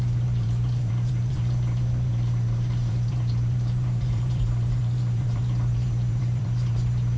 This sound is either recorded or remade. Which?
remade